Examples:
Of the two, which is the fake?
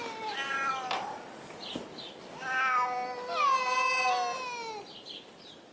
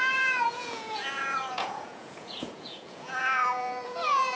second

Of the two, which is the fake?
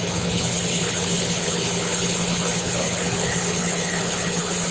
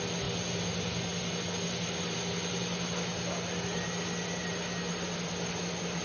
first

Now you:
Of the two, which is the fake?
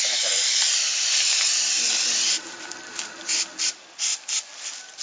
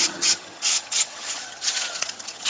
second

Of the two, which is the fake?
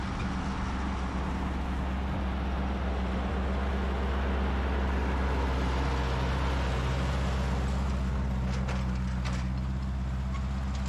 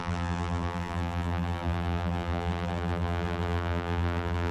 second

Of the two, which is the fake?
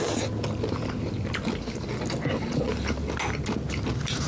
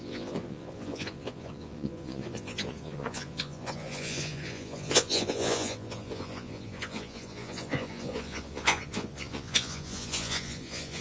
second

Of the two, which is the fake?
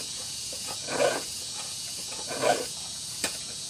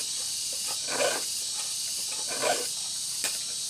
first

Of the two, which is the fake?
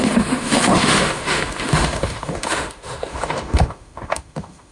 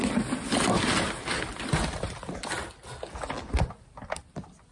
first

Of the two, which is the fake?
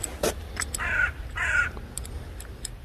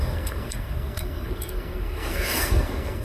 second